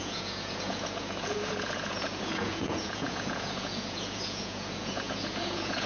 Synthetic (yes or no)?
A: yes